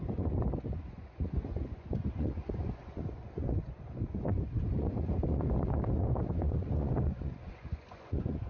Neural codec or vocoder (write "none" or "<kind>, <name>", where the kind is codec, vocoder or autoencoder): vocoder, Vocos